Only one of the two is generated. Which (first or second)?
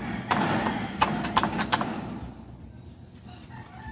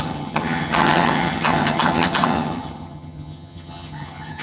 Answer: second